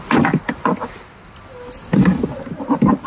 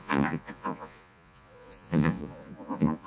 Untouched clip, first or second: first